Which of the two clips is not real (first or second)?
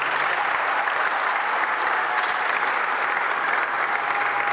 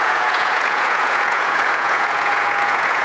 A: second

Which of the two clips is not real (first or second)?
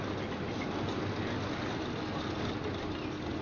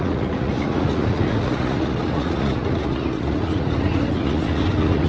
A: second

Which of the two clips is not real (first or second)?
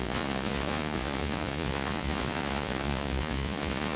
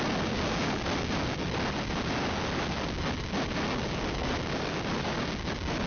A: first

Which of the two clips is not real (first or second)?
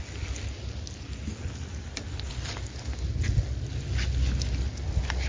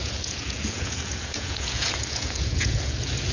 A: second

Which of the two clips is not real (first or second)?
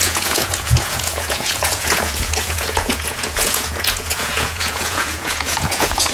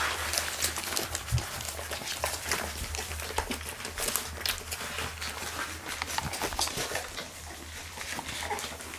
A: first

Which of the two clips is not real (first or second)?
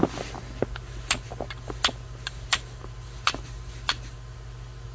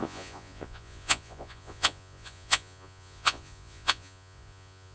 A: second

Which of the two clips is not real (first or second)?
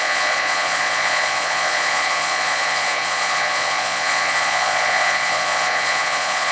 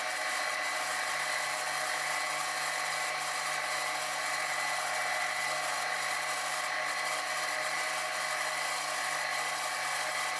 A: first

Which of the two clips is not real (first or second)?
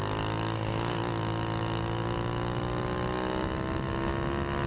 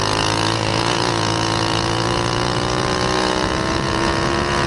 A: second